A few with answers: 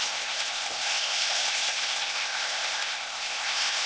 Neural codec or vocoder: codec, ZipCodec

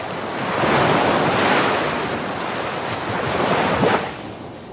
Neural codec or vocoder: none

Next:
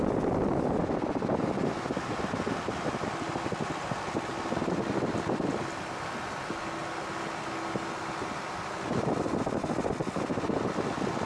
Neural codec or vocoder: none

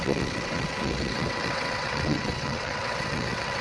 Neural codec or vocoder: vocoder, WaveNeXt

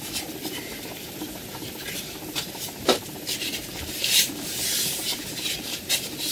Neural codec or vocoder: vocoder, BigVGAN v2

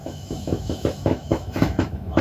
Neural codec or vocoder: autoencoder, DAC-VAE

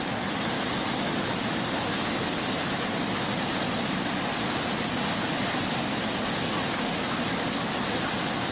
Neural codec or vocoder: none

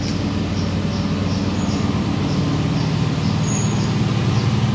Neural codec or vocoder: none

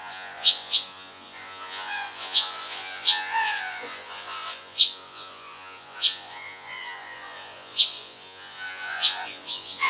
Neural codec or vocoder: vocoder, Vocos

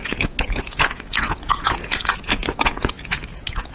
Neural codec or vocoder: vocoder, Vocos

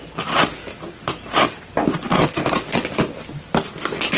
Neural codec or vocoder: none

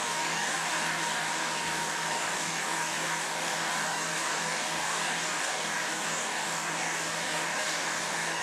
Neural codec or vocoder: codec, DAC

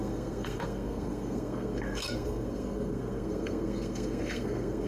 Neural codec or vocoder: codec, SNAC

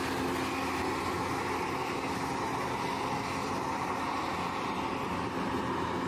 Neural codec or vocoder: none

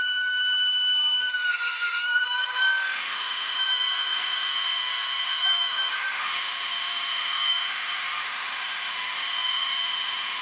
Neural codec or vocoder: autoencoder, DAC-VAE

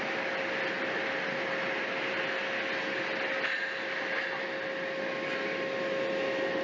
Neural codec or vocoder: none